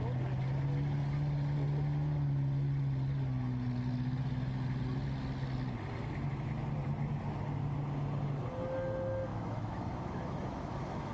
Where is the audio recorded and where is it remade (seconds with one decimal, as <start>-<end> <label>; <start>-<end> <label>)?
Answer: 0.0-9.3 recorded; 9.3-11.1 remade